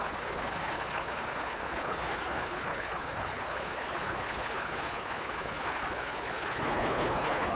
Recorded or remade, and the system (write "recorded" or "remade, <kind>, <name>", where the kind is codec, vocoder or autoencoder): remade, codec, HILCodec